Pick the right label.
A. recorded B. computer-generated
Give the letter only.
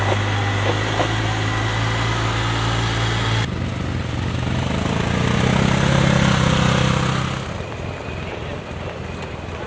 A